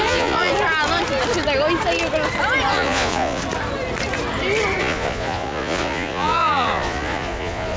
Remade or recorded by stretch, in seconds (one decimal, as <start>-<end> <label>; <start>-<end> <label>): 0.0-0.5 remade; 0.5-2.7 recorded; 2.7-3.4 remade; 3.4-4.8 recorded; 4.8-7.8 remade